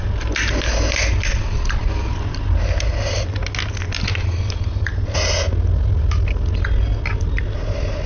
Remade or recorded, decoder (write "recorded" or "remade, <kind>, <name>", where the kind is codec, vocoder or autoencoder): recorded